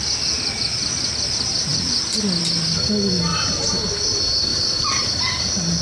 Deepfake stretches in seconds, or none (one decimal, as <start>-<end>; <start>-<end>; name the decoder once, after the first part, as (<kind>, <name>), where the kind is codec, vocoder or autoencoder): 3.3-3.8 (vocoder, BigVGAN v2); 4.5-5.2